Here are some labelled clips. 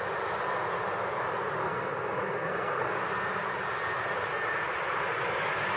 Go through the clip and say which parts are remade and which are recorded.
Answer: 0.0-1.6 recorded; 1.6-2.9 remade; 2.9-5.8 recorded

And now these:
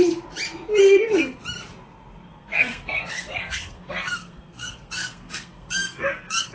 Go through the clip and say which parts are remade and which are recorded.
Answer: 0.0-0.8 recorded; 0.8-1.4 remade; 1.4-2.3 recorded; 2.3-6.5 remade

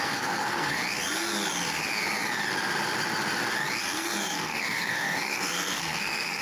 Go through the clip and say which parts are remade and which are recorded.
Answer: 0.0-0.8 remade; 0.8-3.8 recorded; 3.8-6.4 remade

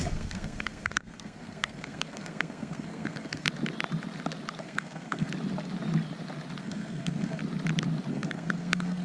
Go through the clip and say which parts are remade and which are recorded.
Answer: 0.0-3.5 remade; 3.5-4.6 recorded; 4.6-5.3 remade; 5.3-6.6 recorded; 6.6-7.4 remade; 7.4-8.1 recorded; 8.1-9.0 remade

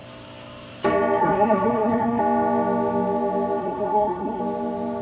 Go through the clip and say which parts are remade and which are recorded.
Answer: 0.0-1.2 recorded; 1.2-2.2 remade; 2.2-3.6 recorded; 3.6-4.4 remade; 4.4-5.0 recorded